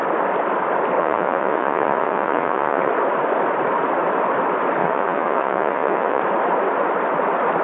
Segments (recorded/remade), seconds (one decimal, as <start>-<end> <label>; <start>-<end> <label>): 0.0-1.0 recorded; 1.0-2.9 remade; 2.9-4.8 recorded; 4.8-6.2 remade; 6.2-7.6 recorded